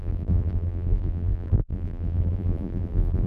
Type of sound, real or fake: fake